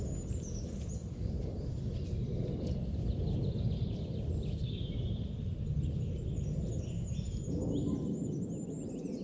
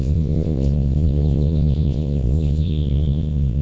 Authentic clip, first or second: first